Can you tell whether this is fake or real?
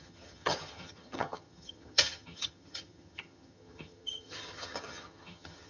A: fake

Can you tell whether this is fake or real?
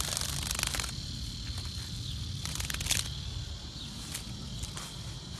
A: real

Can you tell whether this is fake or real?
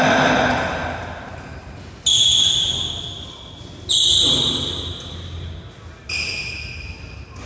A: real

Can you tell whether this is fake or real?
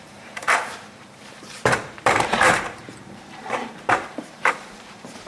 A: fake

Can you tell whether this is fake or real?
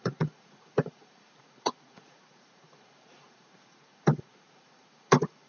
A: fake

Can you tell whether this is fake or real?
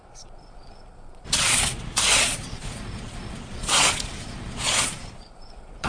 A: fake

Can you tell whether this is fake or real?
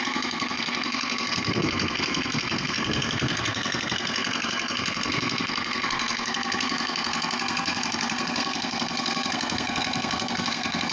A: fake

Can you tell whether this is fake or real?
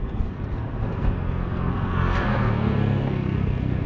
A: fake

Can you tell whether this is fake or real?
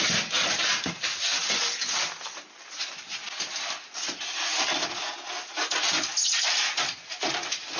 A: real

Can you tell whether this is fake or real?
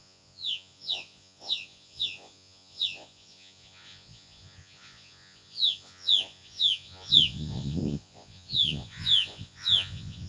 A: fake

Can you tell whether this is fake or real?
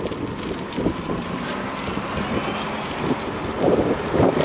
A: real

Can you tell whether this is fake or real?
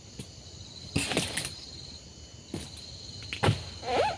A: real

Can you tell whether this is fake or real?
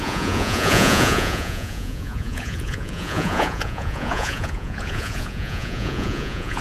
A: fake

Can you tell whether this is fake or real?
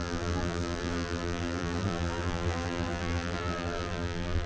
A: fake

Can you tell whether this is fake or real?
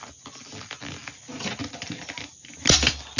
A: real